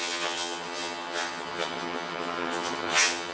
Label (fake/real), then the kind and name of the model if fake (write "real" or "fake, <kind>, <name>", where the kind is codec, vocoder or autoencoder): fake, vocoder, HiFi-GAN